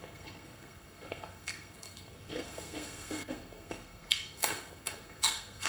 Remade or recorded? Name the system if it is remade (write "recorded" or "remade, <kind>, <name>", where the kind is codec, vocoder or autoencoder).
remade, codec, SNAC